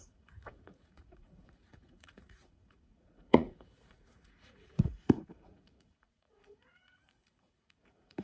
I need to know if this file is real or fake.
fake